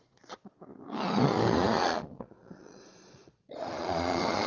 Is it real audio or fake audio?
fake